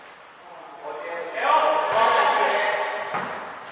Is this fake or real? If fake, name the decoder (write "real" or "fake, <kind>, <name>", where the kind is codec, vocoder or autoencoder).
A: real